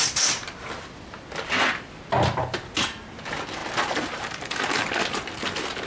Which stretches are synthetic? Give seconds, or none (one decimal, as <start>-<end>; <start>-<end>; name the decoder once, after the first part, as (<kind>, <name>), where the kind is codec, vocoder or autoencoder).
none